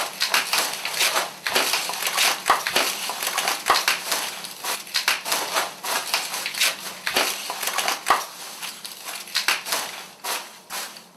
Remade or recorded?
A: recorded